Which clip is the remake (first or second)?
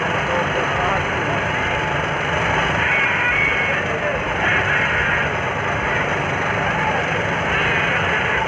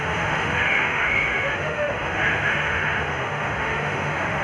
second